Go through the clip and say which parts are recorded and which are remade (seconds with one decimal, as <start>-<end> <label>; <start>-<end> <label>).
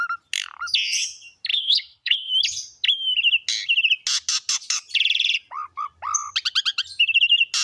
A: 0.0-1.5 recorded; 1.5-2.3 remade; 2.3-7.6 recorded